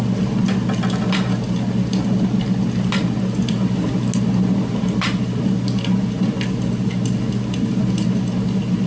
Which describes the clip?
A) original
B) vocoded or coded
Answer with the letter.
A